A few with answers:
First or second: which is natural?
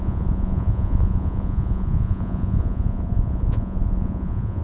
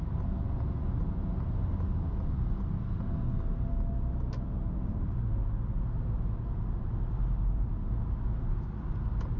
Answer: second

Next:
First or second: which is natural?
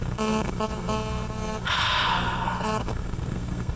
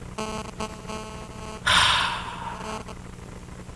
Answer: second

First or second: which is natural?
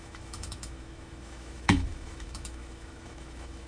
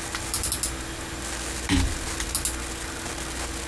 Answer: second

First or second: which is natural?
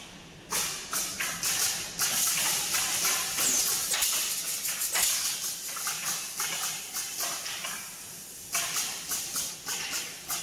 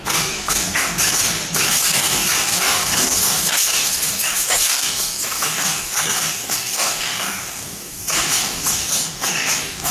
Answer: first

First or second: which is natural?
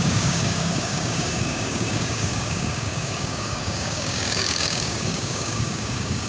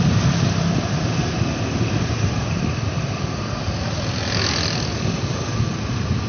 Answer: second